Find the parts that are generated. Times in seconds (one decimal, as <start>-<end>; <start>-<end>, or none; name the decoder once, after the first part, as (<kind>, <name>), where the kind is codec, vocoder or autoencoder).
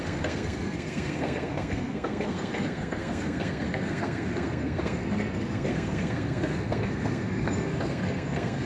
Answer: 0.0-8.7 (codec, SNAC)